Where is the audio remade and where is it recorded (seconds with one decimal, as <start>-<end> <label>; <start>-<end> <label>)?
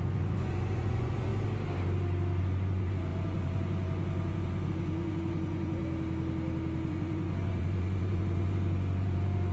0.0-1.3 remade; 1.3-2.4 recorded; 2.4-5.8 remade; 5.8-6.9 recorded; 6.9-9.5 remade